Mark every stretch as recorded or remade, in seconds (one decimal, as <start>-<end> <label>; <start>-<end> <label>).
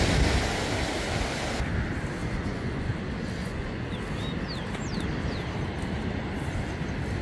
0.0-2.2 recorded; 2.2-2.9 remade; 2.9-3.4 recorded; 3.4-3.9 remade; 3.9-7.2 recorded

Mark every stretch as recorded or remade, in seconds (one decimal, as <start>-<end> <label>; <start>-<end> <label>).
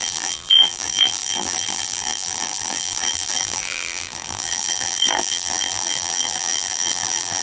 0.0-7.4 remade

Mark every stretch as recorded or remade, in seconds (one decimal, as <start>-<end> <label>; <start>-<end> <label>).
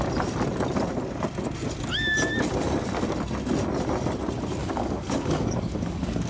0.0-4.6 recorded; 4.6-6.3 remade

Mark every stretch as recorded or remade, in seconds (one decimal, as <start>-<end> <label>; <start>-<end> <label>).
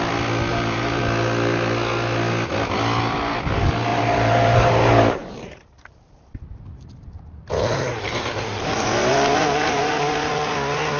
0.0-0.5 recorded; 0.5-1.0 remade; 1.0-3.9 recorded; 3.9-6.3 remade; 6.3-7.9 recorded; 7.9-9.9 remade; 9.9-11.0 recorded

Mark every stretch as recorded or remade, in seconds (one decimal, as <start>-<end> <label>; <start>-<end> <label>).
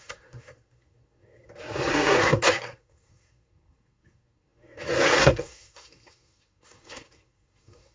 0.0-7.9 remade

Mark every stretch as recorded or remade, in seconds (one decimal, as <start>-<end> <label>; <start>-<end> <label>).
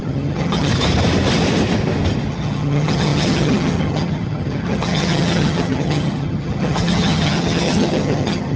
0.0-0.7 remade; 0.7-2.3 recorded; 2.3-8.6 remade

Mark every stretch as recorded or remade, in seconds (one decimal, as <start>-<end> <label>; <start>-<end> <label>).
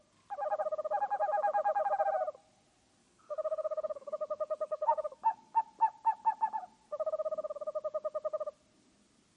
0.0-3.0 recorded; 3.0-5.6 remade; 5.6-9.4 recorded